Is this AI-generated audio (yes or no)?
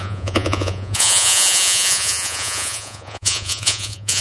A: yes